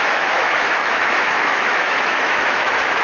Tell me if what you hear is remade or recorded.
remade